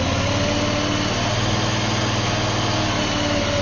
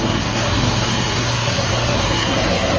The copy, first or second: second